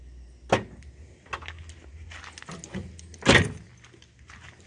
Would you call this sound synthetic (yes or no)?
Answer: no